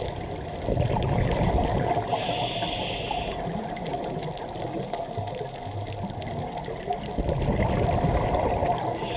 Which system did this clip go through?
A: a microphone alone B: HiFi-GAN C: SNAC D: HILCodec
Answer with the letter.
A